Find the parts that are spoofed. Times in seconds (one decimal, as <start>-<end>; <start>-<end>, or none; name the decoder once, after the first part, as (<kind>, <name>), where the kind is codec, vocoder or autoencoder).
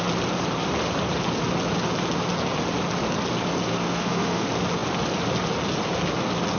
3.7-4.5 (codec, SNAC)